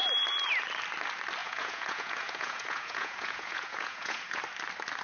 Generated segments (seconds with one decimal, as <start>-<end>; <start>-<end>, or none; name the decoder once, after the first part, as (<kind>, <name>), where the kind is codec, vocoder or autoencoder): 1.4-4.4 (vocoder, Vocos)